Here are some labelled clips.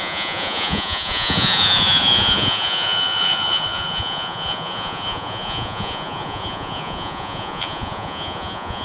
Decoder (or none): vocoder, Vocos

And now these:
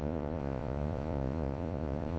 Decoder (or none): vocoder, Vocos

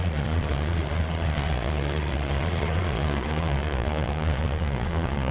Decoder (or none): vocoder, Vocos